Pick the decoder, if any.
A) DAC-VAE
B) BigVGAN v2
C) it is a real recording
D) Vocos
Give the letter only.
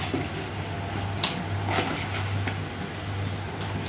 C